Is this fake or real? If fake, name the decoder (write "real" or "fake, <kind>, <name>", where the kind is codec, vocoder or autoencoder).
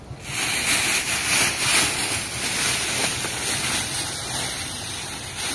real